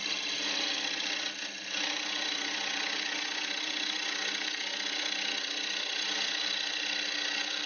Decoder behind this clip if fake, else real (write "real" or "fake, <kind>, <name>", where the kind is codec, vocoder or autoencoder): real